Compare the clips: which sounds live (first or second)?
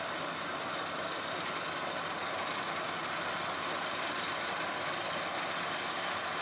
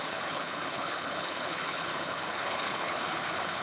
first